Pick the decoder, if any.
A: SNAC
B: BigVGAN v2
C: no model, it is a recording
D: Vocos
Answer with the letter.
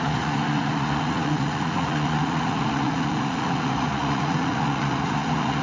D